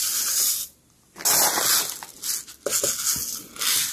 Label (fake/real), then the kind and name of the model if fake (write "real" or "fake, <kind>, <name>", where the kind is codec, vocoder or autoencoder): real